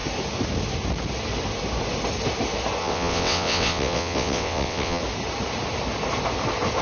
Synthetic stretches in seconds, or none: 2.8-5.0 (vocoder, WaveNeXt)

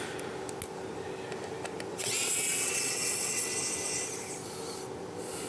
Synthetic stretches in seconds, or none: 1.9-3.5 (vocoder, WaveNeXt)

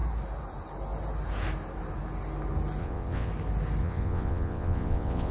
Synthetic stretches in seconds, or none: 2.8-3.3 (vocoder, WaveNeXt); 3.8-5.3

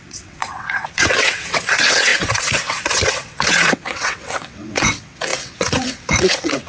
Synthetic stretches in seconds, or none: 0.0-6.7 (vocoder, WaveNeXt)

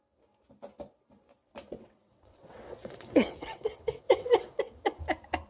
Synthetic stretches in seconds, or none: 1.7-5.0 (vocoder, WaveNeXt)

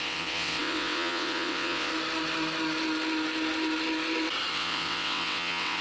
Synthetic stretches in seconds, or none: 0.0-1.9 (vocoder, WaveNeXt); 4.5-5.8

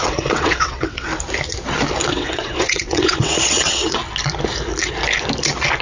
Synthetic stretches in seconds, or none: 0.0-1.1 (vocoder, WaveNeXt); 2.1-4.0